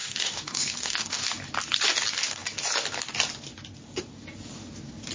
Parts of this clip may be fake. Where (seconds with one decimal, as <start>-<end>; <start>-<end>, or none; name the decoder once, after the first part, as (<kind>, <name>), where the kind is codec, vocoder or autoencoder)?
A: 0.0-1.3 (autoencoder, DAC-VAE)